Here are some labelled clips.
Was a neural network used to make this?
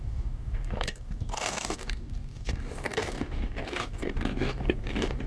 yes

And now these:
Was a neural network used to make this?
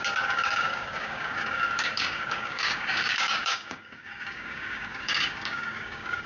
yes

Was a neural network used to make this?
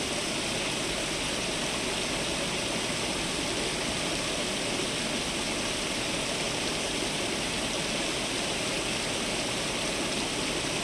no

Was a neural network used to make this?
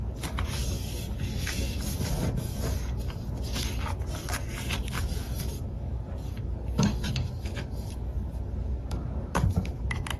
yes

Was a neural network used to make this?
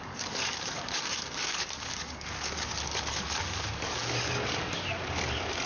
yes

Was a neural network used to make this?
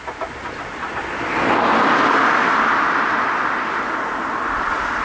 no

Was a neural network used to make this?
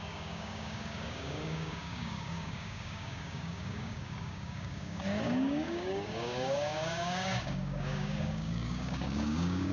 yes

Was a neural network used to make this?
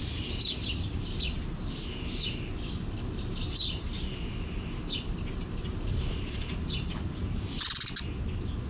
no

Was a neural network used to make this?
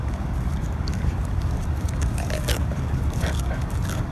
yes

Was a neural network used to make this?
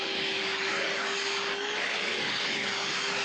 yes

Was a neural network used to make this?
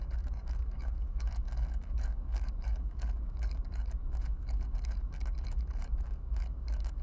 yes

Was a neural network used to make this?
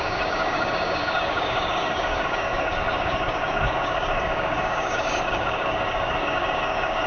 yes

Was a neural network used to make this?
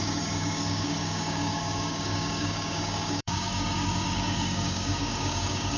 yes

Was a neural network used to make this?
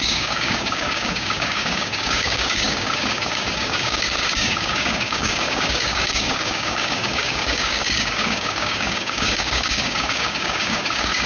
yes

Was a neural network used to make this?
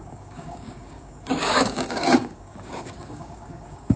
yes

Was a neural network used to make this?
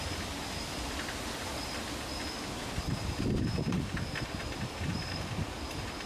no